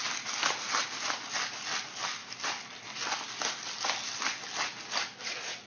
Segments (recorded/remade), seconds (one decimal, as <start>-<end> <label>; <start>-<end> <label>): 0.0-2.2 recorded; 2.2-5.7 remade